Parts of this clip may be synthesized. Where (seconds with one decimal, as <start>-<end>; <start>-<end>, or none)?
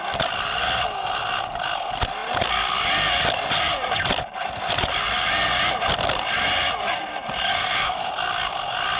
7.5-8.1